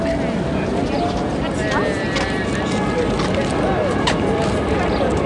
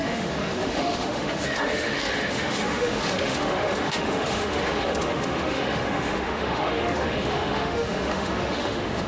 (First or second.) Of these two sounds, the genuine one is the first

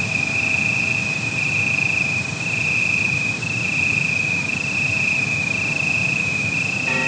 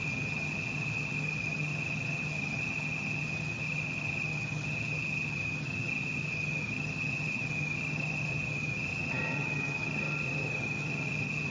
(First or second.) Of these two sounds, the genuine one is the first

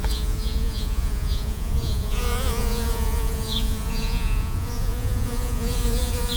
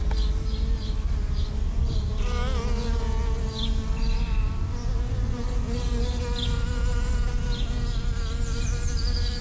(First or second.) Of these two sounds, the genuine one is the second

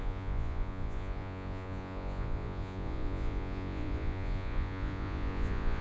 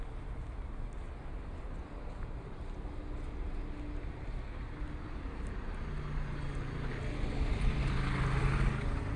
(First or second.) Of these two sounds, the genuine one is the second